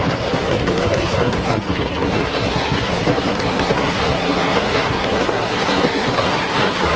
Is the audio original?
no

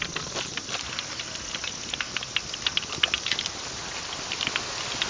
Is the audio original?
yes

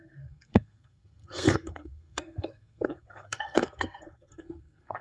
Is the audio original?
no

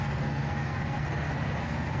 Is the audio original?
no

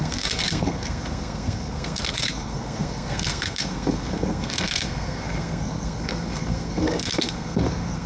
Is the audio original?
no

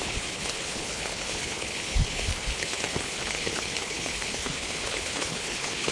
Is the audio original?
no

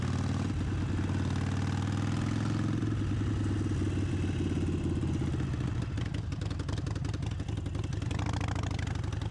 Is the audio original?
yes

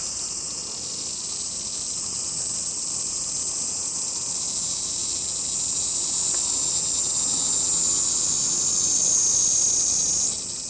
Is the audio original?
yes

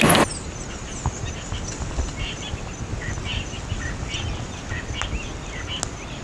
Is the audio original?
yes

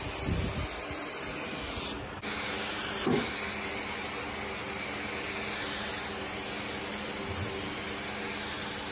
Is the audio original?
yes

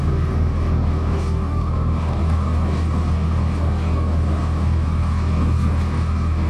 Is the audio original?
no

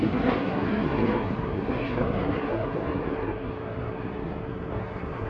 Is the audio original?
no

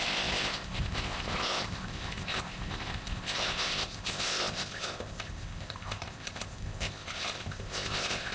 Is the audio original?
no